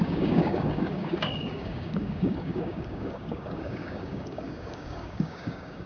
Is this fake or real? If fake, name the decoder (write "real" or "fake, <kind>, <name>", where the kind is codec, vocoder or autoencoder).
fake, codec, DAC